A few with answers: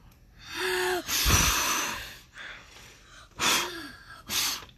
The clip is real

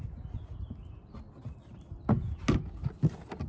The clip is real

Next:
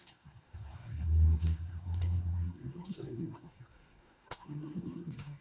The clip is fake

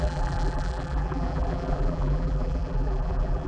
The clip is fake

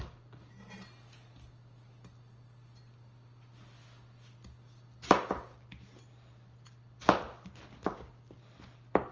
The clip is real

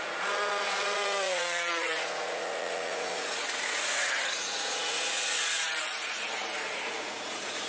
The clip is fake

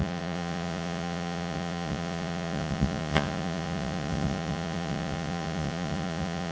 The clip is fake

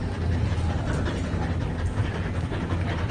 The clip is real